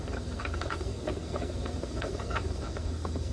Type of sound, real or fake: fake